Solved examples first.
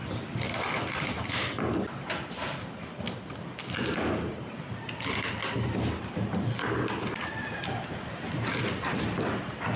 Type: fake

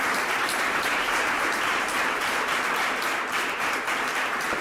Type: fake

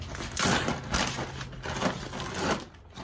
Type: real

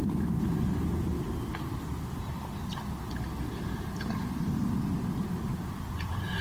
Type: fake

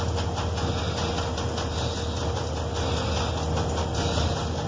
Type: real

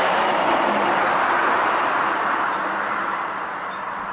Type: fake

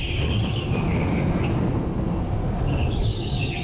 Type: real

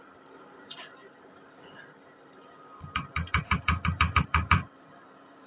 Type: fake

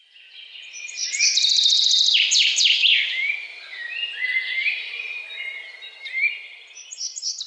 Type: fake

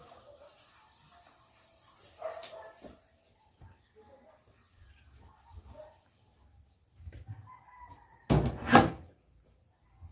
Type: real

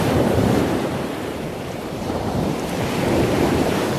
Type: fake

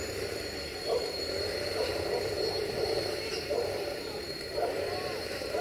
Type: fake